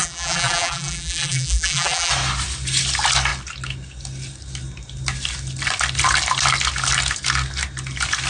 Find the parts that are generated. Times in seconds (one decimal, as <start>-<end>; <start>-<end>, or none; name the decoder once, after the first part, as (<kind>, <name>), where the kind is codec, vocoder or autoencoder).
0.0-2.1 (vocoder, BigVGAN v2)